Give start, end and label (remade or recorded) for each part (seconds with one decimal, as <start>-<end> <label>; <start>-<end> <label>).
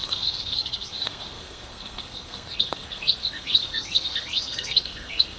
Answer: 0.0-5.4 remade